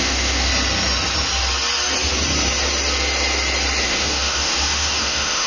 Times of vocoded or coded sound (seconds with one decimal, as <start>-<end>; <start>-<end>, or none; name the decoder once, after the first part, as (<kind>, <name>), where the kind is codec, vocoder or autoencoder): 0.0-0.5 (autoencoder, DAC-VAE); 3.8-5.5